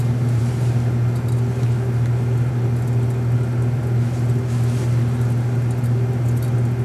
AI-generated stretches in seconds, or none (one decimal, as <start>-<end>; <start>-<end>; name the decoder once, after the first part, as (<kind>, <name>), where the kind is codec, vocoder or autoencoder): none